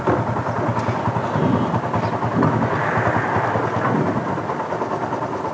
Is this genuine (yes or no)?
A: yes